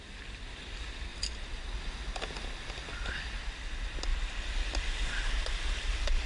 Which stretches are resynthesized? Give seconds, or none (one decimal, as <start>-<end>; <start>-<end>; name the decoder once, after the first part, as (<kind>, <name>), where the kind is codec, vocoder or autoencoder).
none